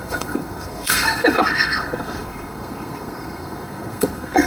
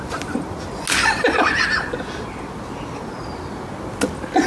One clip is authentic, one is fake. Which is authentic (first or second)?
second